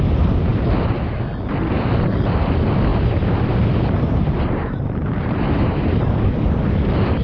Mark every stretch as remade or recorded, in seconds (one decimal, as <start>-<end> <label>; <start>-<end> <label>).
0.0-0.5 recorded; 0.5-1.0 remade; 1.0-2.9 recorded; 2.9-6.6 remade; 6.6-7.2 recorded